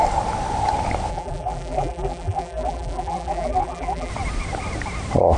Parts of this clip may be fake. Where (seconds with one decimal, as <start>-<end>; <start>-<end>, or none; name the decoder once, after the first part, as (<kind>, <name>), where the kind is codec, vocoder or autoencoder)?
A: 1.1-4.1 (vocoder, BigVGAN v2)